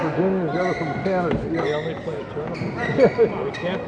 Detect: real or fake real